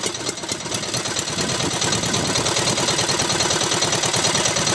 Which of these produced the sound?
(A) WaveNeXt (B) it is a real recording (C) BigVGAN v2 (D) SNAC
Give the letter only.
B